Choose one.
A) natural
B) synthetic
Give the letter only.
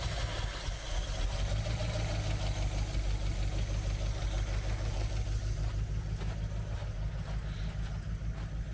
A